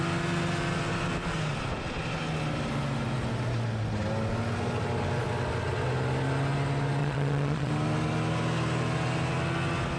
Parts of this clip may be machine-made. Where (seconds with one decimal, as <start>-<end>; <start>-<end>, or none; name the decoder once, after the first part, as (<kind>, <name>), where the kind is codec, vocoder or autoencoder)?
7.0-7.7 (vocoder, Vocos)